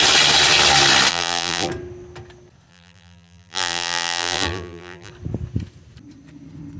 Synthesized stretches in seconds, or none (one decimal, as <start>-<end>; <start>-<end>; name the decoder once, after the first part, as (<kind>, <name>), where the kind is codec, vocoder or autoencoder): 1.1-1.7 (vocoder, BigVGAN v2); 2.7-5.1